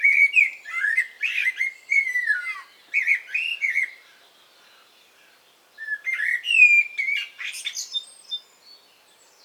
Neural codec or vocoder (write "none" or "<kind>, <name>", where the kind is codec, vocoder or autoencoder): none